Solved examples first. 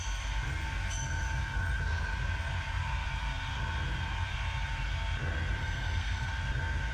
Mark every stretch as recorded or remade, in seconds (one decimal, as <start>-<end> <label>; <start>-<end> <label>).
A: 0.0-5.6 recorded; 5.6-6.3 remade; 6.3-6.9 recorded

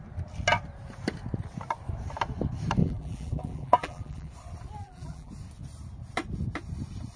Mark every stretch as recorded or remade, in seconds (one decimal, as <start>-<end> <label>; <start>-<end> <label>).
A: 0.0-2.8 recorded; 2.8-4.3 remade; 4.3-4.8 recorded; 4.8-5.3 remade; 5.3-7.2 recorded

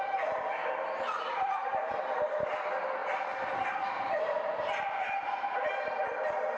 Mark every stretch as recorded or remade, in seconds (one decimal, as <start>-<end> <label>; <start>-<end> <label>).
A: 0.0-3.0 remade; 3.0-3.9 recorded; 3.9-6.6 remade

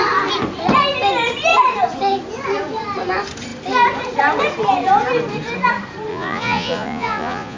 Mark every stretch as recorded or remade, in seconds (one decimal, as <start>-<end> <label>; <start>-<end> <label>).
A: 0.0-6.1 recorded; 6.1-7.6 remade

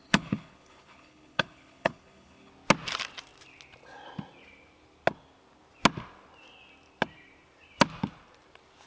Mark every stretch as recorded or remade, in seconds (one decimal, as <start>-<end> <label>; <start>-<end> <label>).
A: 0.0-2.5 remade; 2.5-8.9 recorded